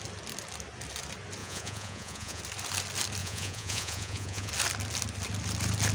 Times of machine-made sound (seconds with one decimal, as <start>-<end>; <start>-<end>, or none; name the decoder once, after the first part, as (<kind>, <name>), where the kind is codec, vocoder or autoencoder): 1.4-2.4 (vocoder, Vocos); 3.2-4.5